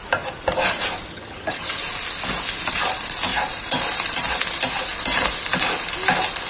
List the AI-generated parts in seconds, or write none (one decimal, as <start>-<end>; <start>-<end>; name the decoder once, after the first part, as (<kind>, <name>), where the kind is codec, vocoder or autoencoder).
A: 1.1-1.8 (vocoder, HiFi-GAN)

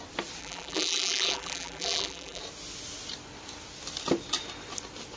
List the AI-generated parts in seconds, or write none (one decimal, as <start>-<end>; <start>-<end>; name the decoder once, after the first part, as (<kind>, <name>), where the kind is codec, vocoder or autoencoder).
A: 0.4-2.4 (vocoder, BigVGAN v2)

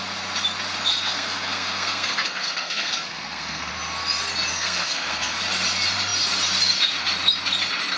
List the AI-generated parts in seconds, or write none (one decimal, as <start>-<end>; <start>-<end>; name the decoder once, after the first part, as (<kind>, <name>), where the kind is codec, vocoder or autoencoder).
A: 0.9-3.7 (codec, SNAC); 4.5-5.4